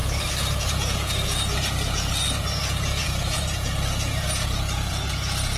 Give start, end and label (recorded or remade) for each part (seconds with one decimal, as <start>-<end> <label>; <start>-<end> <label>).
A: 0.0-0.6 recorded; 0.6-5.6 remade